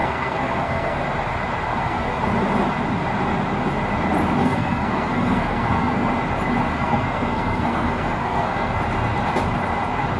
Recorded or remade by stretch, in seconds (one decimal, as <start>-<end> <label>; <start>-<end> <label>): 0.0-1.0 remade; 1.0-1.7 recorded; 1.7-2.2 remade; 2.2-4.4 recorded; 4.4-6.1 remade; 6.1-6.7 recorded; 6.7-8.8 remade; 8.8-10.2 recorded